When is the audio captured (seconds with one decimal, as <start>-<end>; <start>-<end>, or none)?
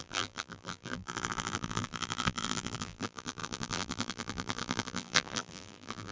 none